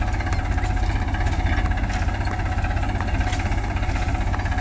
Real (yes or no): yes